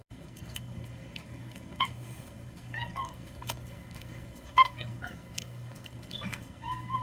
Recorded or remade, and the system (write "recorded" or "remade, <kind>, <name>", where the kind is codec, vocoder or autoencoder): remade, codec, SNAC